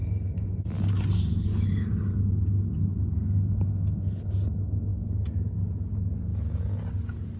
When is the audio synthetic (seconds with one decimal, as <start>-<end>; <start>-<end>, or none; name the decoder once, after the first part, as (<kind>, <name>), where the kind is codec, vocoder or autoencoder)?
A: none